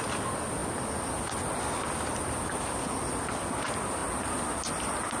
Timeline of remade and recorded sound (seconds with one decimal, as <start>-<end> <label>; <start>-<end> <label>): 0.0-5.2 recorded